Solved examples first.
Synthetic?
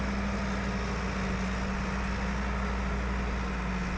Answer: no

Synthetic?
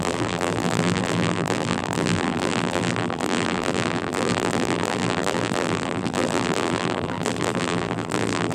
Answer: yes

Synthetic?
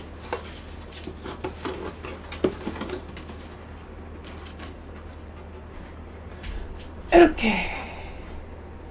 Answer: no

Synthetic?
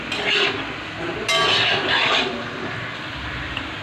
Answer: no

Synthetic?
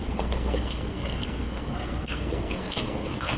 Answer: yes